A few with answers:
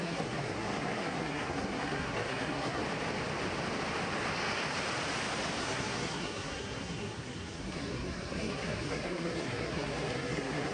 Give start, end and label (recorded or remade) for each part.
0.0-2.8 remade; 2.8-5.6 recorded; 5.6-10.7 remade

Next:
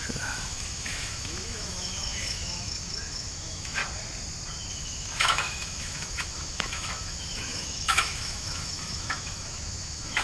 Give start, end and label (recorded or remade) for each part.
0.0-3.8 remade; 3.8-4.7 recorded; 4.7-10.2 remade

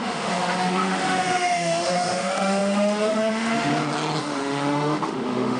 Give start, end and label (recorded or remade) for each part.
0.0-3.7 remade; 3.7-4.2 recorded; 4.2-5.6 remade

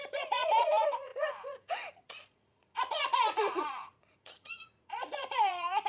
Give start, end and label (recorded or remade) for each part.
0.0-5.9 remade

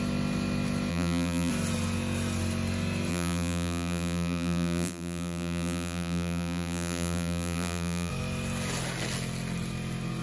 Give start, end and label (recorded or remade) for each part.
0.0-0.9 recorded; 0.9-1.5 remade; 1.5-3.1 recorded; 3.1-8.1 remade; 8.1-10.2 recorded